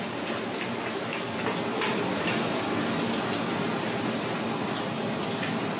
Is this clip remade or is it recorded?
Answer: recorded